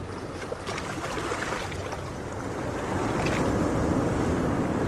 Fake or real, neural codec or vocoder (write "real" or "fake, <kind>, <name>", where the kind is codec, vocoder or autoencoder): real